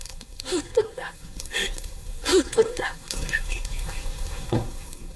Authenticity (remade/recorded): remade